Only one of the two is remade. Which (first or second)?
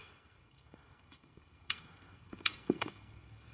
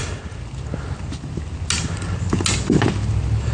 first